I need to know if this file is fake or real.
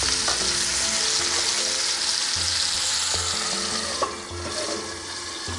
real